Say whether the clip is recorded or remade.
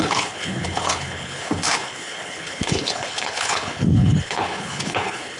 remade